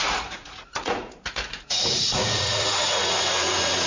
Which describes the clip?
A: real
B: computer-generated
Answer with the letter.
B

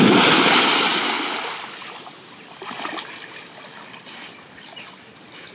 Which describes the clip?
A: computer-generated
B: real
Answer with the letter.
B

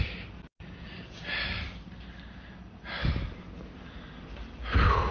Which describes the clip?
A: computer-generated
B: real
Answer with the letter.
B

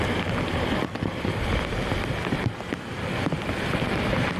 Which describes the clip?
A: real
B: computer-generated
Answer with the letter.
A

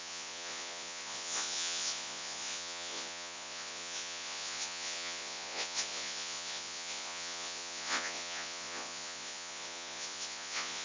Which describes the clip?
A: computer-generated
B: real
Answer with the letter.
A